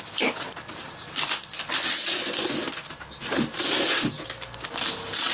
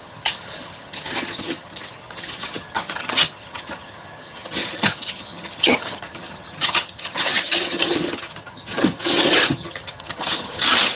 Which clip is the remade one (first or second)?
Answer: second